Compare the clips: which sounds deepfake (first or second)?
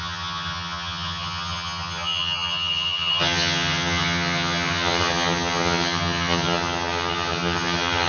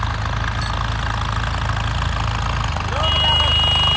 first